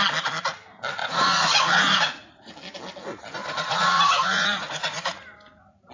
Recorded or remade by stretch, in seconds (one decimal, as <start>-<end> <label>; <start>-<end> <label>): 0.0-1.0 recorded; 1.0-2.5 remade; 2.5-3.4 recorded; 3.4-5.1 remade; 5.1-5.9 recorded